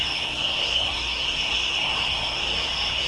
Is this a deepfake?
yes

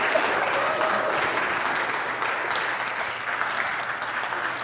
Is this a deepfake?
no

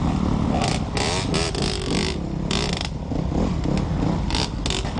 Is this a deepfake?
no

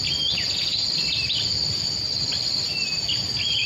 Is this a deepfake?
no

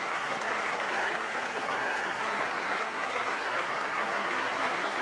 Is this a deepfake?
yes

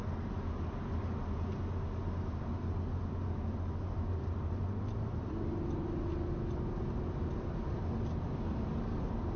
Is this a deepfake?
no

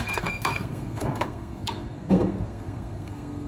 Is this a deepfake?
yes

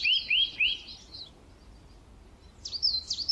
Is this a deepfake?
no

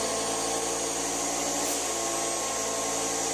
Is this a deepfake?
no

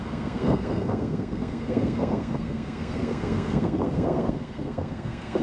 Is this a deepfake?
yes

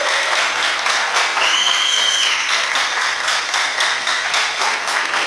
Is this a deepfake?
yes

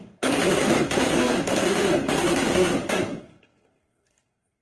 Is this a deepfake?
yes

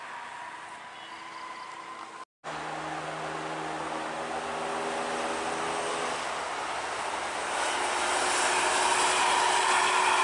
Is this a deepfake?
no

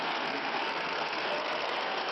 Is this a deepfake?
yes